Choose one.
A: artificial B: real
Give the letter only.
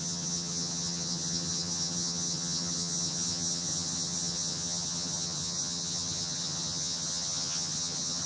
A